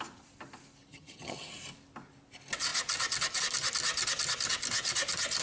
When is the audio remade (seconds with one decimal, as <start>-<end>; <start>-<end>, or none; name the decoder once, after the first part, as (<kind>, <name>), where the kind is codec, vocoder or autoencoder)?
0.9-1.5 (vocoder, HiFi-GAN)